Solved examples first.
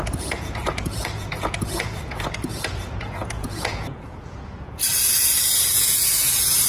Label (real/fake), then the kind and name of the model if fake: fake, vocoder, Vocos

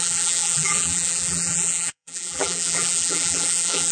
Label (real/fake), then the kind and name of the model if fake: fake, vocoder, BigVGAN v2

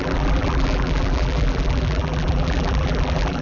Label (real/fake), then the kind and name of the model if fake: fake, vocoder, BigVGAN v2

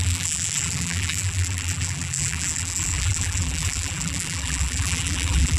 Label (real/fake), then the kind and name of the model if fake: fake, vocoder, BigVGAN v2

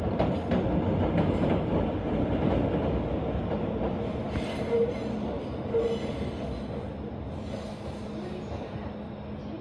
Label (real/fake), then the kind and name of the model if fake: real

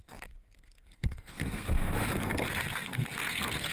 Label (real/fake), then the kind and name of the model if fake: fake, codec, SNAC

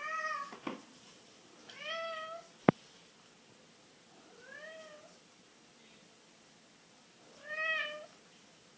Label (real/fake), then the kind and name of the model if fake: real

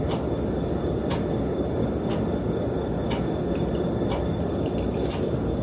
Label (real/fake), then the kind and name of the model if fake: real